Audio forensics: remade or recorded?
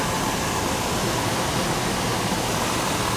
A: recorded